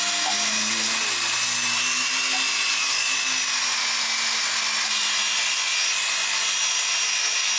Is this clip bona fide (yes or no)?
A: yes